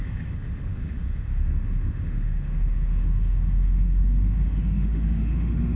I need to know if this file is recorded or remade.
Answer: remade